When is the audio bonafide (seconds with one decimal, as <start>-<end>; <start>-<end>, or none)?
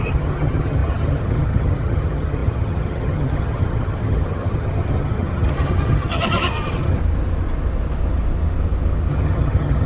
7.0-9.1